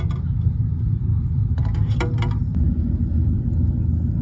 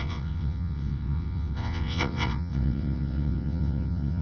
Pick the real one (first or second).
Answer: first